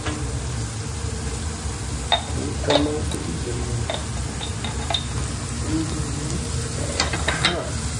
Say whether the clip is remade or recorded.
recorded